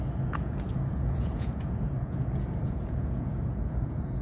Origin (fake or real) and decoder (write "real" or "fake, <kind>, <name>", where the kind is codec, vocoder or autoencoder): fake, vocoder, Vocos